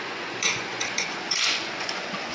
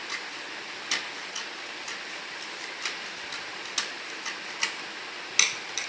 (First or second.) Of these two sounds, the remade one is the first